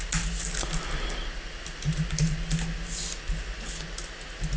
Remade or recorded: recorded